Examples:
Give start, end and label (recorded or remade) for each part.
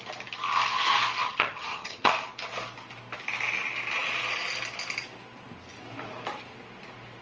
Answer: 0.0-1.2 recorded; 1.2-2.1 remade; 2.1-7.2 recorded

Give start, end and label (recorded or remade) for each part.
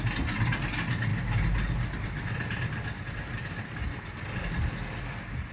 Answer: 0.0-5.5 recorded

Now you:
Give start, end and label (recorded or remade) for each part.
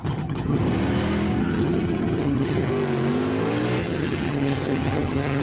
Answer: 0.0-0.6 remade; 0.6-1.4 recorded; 1.4-2.7 remade; 2.7-3.8 recorded; 3.8-5.4 remade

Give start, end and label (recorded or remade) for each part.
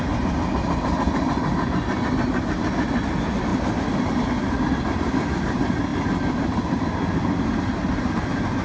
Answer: 0.0-8.6 recorded